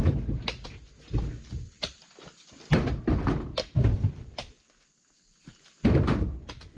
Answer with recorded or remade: recorded